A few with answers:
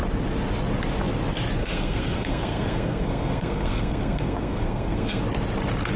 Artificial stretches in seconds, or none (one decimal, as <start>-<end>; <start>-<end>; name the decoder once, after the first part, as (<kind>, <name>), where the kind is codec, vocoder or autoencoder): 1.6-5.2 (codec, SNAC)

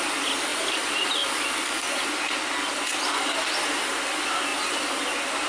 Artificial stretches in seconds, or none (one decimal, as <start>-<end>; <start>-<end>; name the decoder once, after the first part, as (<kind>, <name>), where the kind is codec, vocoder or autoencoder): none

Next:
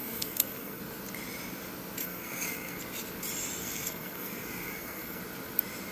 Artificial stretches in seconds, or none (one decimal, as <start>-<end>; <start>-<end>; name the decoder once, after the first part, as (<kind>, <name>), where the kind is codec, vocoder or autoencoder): 0.0-0.8 (codec, SNAC); 2.0-2.8; 3.6-5.2